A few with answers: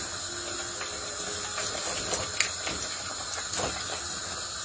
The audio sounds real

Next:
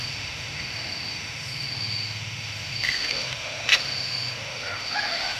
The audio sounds fake